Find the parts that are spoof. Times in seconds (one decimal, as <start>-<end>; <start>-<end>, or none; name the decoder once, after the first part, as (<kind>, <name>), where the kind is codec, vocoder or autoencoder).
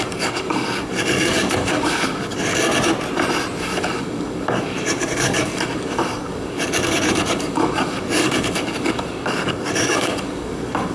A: 0.0-2.5 (codec, DAC); 3.6-10.9